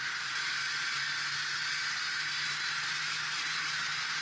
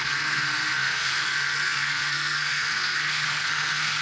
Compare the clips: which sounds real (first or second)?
first